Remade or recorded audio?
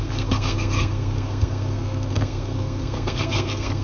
remade